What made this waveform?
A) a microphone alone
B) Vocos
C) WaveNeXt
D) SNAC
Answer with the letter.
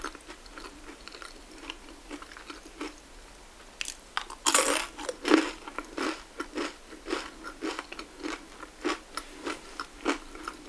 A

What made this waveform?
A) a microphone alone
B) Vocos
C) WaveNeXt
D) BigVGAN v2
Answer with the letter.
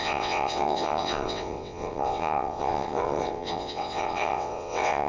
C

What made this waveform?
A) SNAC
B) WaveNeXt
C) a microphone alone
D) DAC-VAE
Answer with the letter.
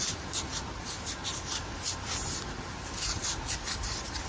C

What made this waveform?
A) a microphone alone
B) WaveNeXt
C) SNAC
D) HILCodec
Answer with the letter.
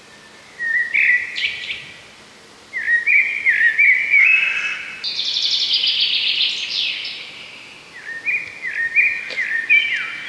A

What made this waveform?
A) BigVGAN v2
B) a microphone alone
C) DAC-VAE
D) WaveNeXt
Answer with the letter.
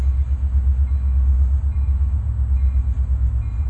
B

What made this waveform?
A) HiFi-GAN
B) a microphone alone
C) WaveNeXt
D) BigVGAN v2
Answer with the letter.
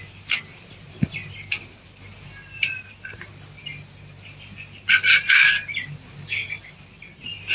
B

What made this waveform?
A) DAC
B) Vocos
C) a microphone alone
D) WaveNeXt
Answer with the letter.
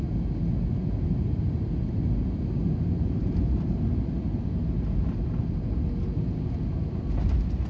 C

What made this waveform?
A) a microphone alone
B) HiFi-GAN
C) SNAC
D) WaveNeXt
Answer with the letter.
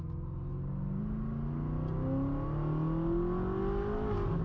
A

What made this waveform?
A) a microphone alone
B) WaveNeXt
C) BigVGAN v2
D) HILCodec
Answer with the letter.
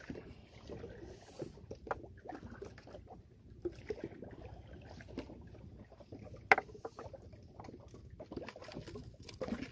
A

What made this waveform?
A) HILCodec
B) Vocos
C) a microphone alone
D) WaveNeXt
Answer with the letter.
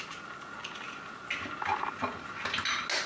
C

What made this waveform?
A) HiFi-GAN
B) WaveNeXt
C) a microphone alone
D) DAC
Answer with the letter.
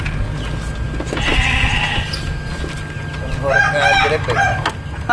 C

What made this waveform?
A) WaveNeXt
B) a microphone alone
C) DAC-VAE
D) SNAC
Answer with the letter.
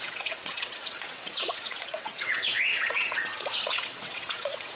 A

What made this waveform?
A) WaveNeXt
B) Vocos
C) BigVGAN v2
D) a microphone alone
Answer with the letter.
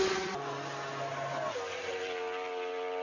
D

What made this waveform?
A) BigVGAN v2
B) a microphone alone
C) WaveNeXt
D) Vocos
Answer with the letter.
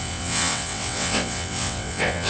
C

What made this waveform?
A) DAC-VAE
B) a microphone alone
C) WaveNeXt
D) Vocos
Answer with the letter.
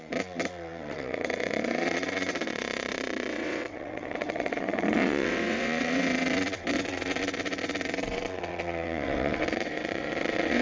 C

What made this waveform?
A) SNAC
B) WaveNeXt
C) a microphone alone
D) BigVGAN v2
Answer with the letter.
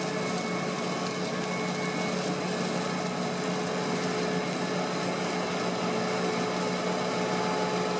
C